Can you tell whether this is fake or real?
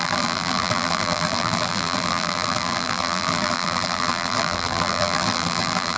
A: fake